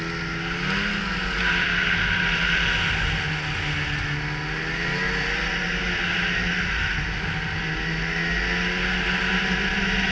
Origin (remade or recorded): recorded